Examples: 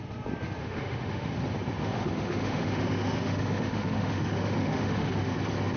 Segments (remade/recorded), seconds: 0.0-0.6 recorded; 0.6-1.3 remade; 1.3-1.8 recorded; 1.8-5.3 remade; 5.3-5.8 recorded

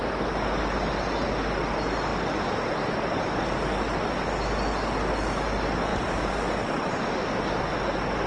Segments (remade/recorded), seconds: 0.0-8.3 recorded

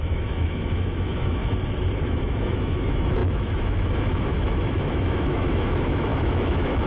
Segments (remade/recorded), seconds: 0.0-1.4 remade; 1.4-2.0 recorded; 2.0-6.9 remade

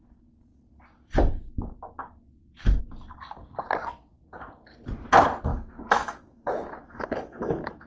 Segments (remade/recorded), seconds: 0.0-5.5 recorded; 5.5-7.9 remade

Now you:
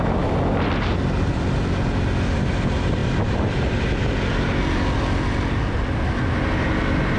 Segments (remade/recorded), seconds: 0.0-7.2 recorded

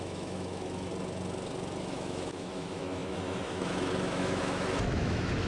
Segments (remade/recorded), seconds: 0.0-0.9 remade; 0.9-1.8 recorded; 1.8-5.5 remade

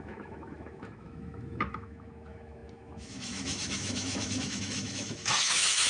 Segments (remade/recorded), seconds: 0.0-5.9 remade